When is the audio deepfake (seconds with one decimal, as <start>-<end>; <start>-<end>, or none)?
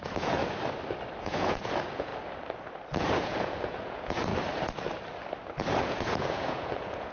0.0-0.4; 1.2-2.1; 3.0-4.3; 5.7-7.1